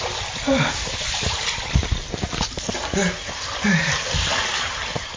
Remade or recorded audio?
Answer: recorded